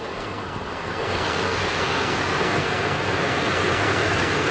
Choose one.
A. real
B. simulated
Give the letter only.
B